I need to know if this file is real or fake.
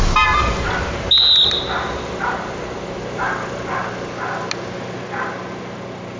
real